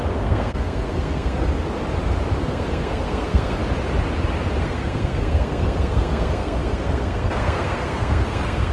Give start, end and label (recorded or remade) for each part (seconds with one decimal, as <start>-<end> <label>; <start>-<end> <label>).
0.0-1.5 remade; 1.5-2.4 recorded; 2.4-3.6 remade; 3.6-4.6 recorded; 4.6-8.7 remade